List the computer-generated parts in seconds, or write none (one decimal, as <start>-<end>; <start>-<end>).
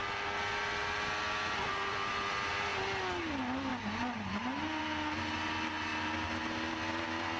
none